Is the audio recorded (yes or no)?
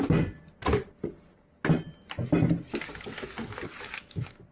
yes